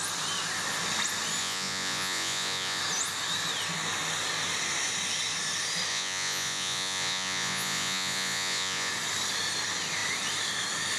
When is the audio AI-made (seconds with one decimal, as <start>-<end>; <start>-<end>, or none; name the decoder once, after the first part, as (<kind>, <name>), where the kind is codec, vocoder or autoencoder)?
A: 1.4-2.8 (vocoder, Vocos); 5.9-8.9